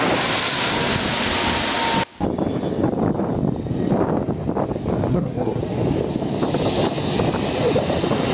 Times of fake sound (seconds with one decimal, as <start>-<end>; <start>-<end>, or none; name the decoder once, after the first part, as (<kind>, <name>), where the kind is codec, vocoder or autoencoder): 5.1-5.6 (codec, SNAC)